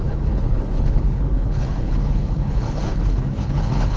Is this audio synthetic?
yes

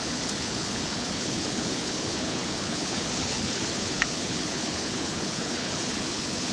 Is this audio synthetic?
yes